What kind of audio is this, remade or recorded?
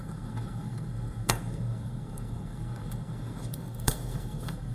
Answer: remade